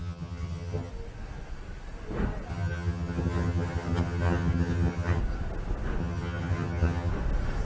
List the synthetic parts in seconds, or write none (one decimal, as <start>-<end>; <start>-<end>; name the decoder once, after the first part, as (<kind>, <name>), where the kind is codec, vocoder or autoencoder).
0.0-0.9 (vocoder, HiFi-GAN); 2.5-5.2; 6.0-7.1